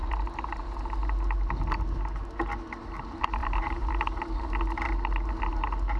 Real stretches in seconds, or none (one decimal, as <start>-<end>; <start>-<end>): 0.0-3.4; 4.2-6.0